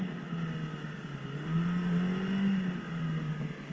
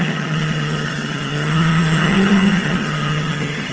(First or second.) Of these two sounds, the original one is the first